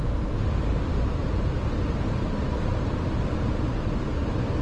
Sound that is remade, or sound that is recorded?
remade